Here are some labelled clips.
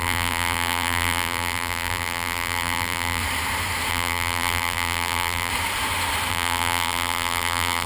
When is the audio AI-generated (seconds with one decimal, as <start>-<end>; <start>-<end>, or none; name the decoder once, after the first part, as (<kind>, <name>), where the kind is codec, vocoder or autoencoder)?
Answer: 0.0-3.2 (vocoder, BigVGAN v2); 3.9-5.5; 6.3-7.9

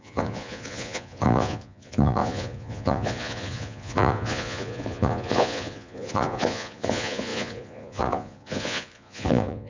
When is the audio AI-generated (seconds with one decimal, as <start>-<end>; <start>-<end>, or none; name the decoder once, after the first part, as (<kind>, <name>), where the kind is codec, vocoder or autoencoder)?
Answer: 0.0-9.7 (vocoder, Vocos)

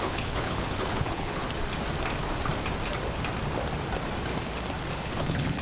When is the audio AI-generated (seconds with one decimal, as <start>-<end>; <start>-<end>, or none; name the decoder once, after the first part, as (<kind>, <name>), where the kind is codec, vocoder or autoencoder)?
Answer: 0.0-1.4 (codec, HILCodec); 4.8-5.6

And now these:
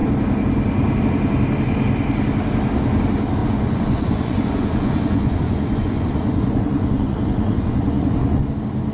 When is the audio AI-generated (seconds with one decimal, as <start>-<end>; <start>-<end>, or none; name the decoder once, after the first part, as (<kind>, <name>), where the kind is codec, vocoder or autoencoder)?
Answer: 3.4-8.5 (vocoder, Vocos)

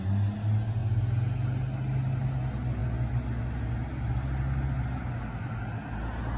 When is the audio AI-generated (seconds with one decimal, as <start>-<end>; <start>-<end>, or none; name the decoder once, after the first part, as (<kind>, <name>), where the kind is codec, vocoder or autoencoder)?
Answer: none